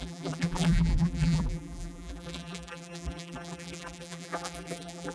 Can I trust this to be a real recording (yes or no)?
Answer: no